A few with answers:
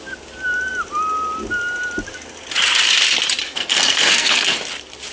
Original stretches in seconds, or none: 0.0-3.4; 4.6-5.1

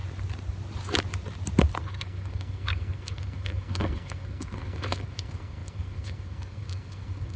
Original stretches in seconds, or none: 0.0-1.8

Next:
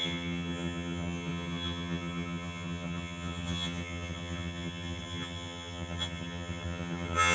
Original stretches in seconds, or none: none